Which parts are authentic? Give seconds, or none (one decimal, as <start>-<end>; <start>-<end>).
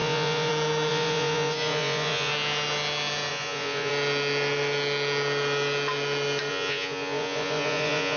0.5-0.9; 2.3-3.3; 3.9-6.5